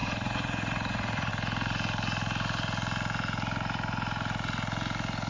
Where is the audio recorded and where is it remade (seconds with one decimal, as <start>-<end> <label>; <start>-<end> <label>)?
0.0-1.3 remade; 1.3-5.3 recorded